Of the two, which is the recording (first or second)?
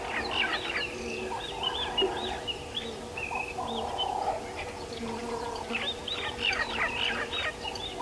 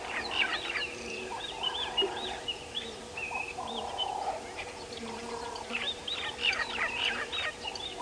first